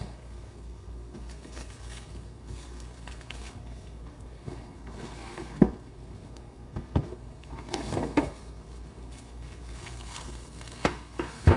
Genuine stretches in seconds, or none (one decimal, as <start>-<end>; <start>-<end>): none